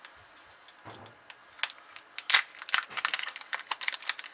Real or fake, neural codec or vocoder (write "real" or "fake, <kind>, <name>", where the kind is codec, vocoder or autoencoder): real